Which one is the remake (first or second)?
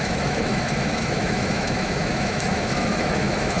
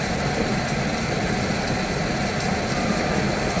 first